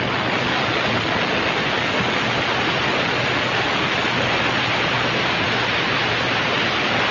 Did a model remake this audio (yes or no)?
no